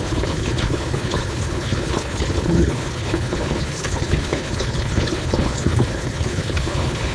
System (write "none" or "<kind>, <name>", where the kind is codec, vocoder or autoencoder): codec, HILCodec